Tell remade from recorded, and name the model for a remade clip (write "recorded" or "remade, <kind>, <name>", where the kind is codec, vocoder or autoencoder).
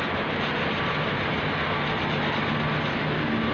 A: recorded